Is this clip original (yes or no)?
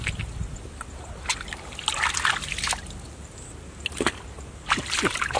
yes